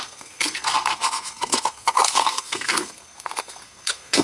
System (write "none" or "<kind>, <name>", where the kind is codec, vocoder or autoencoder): codec, SNAC